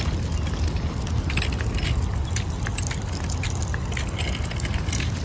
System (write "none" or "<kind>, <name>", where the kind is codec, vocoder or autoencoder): none